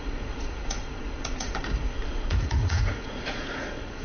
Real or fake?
fake